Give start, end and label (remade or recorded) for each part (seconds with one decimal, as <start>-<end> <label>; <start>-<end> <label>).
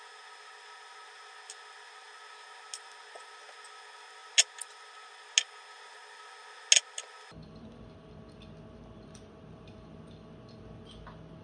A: 0.0-11.4 recorded